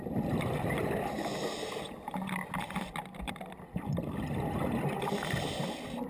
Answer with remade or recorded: recorded